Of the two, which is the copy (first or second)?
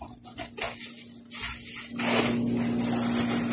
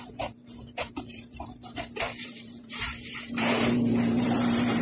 second